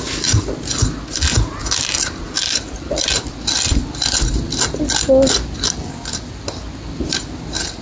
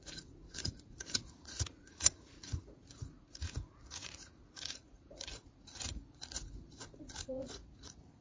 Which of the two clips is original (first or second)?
first